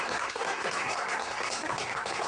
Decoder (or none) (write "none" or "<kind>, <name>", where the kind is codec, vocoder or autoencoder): codec, SNAC